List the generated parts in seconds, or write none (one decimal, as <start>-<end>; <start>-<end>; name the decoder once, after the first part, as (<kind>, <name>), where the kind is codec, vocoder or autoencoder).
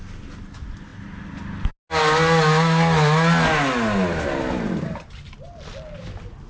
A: none